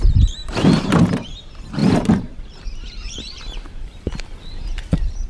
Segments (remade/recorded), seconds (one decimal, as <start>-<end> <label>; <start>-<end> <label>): 0.0-5.3 remade